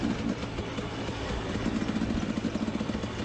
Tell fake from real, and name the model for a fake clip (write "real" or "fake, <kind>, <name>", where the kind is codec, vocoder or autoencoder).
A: real